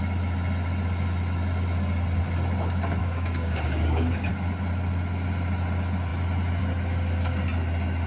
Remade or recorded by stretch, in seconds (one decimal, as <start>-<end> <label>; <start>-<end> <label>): 0.0-3.0 recorded; 3.0-4.3 remade; 4.3-8.1 recorded